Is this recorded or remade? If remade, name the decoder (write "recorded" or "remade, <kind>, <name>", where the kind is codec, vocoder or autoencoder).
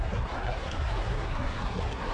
remade, codec, SNAC